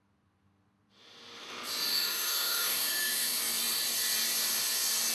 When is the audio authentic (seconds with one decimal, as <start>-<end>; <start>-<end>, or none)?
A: 0.0-1.9; 3.4-5.1